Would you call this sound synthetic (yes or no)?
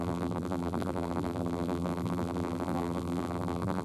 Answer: yes